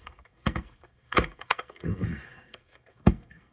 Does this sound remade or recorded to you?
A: remade